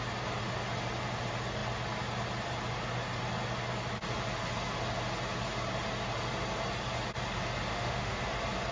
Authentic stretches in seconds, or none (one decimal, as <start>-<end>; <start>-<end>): 0.0-7.7; 8.2-8.7